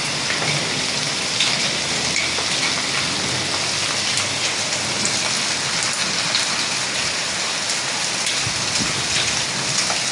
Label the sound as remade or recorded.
recorded